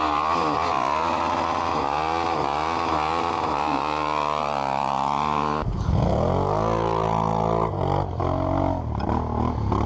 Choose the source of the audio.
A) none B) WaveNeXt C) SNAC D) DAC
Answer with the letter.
A